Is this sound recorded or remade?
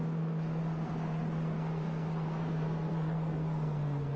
remade